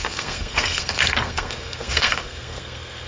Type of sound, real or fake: fake